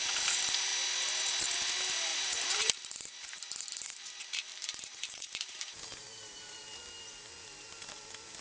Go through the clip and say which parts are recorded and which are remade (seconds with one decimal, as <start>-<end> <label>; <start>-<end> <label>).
0.0-2.1 recorded; 2.1-2.7 remade; 2.7-4.5 recorded; 4.5-6.6 remade; 6.6-8.4 recorded